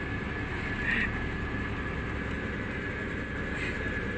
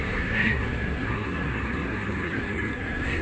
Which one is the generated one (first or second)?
second